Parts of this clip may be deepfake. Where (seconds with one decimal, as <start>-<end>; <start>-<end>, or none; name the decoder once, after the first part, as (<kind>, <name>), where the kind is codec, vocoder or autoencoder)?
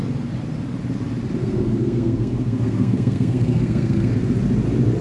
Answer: 1.4-4.1 (codec, SNAC)